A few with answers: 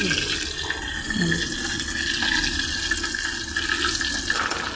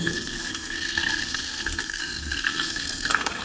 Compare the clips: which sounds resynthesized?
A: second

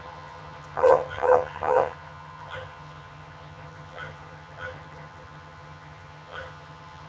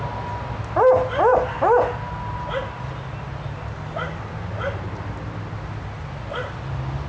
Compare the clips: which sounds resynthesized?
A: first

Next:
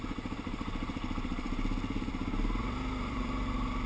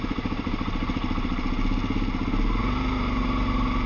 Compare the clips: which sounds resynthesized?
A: first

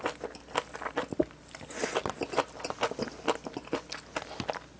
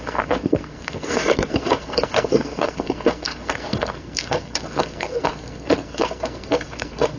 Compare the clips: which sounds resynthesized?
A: second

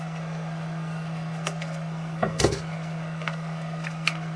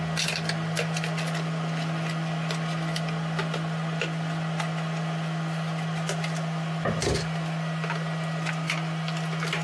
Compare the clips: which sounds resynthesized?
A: first